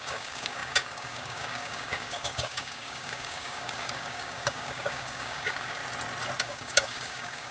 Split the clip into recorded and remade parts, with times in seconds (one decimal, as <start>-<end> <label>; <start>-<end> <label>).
0.0-5.8 remade; 5.8-6.4 recorded; 6.4-7.5 remade